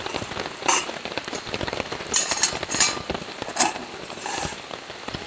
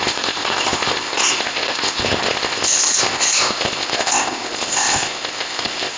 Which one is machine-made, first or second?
second